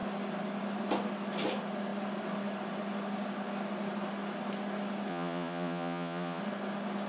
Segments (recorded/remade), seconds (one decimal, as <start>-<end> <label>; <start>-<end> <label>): 0.0-5.1 recorded; 5.1-6.4 remade; 6.4-7.1 recorded